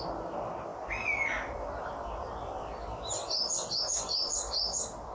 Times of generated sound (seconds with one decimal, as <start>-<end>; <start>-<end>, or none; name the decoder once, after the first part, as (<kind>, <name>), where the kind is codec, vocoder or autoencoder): none